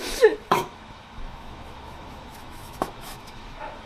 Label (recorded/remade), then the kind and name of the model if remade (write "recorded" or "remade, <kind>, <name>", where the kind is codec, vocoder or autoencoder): remade, autoencoder, DAC-VAE